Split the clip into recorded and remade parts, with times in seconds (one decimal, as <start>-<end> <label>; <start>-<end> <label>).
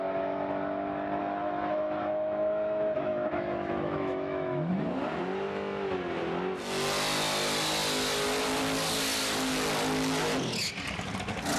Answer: 0.0-1.2 recorded; 1.2-4.7 remade; 4.7-11.6 recorded